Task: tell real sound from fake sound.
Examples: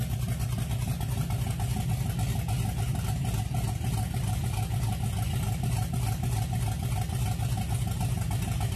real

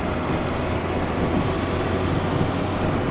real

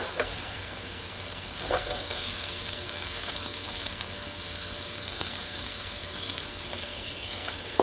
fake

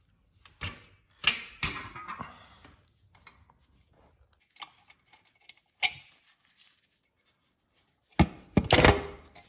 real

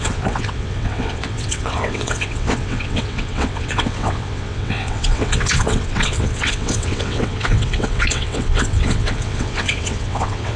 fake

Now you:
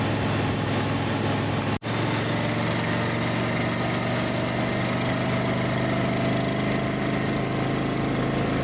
real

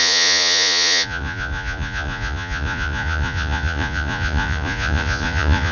fake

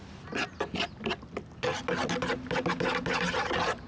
real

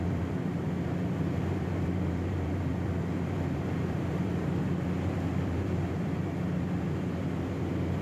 fake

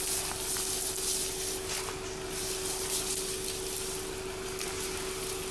real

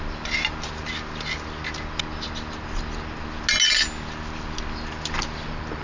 real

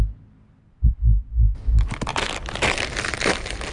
fake